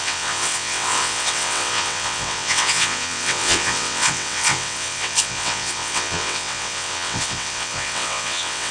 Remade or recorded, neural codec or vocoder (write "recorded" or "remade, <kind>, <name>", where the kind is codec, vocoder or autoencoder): remade, vocoder, WaveNeXt